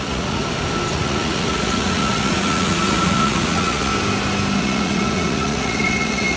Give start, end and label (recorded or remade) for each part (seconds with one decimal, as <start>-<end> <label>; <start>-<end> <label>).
0.0-0.4 remade; 0.4-0.9 recorded; 0.9-3.9 remade; 3.9-4.6 recorded; 4.6-6.4 remade